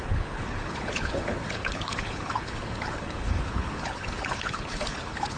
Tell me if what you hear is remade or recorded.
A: remade